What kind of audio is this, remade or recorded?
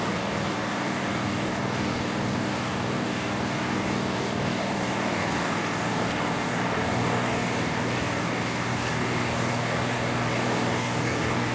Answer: remade